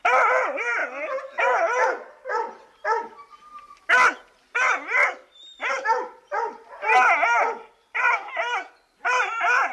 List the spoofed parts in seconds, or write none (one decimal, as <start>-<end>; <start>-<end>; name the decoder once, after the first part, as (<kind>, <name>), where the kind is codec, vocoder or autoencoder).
none